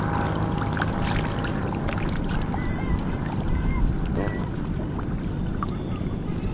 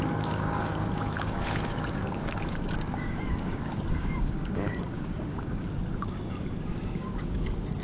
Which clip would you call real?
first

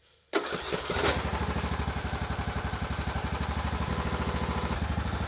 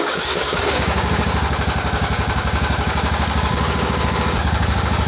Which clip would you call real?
first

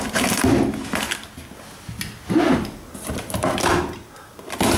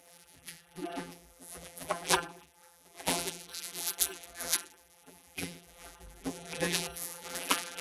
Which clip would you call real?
first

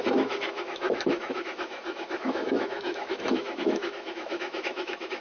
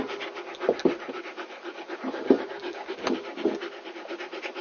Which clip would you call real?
second